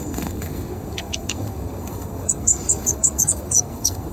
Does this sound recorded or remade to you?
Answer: remade